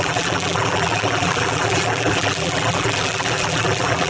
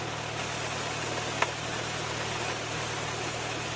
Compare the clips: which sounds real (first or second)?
second